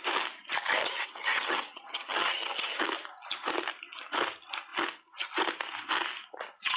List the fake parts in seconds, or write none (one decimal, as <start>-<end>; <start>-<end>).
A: 0.8-2.8